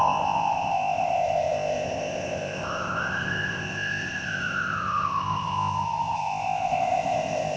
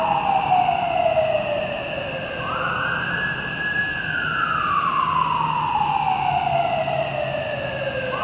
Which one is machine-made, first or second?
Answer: first